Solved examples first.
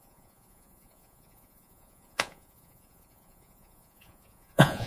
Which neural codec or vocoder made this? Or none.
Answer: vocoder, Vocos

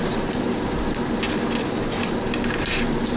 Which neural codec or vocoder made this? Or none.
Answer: none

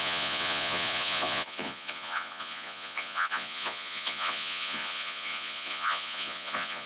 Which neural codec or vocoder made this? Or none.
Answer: vocoder, Vocos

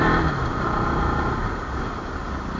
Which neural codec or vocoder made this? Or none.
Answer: none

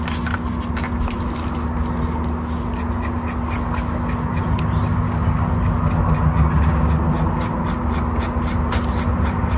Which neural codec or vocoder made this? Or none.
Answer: none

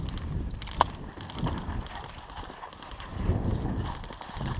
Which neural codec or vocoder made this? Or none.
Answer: none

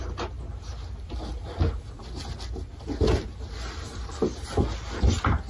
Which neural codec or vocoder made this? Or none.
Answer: none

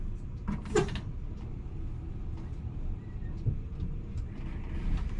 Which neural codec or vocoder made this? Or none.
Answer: none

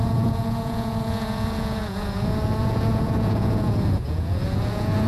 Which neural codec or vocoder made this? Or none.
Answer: vocoder, Vocos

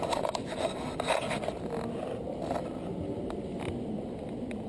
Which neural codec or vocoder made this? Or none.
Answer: none